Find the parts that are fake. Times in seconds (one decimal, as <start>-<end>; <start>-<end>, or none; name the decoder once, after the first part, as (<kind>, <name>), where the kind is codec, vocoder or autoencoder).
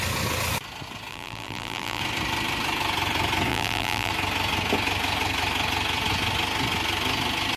1.1-2.0 (vocoder, BigVGAN v2); 3.5-4.1